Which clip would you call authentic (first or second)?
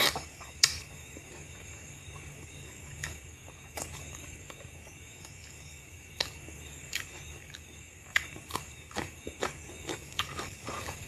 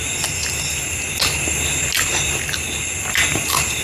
second